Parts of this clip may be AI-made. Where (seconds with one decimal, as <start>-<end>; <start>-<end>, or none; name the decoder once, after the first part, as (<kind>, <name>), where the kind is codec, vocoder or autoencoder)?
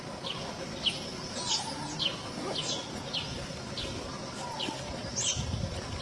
none